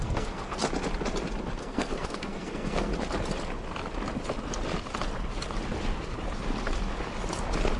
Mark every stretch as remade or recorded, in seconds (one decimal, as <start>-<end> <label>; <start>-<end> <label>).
0.0-0.6 remade; 0.6-1.6 recorded; 1.6-2.9 remade; 2.9-7.8 recorded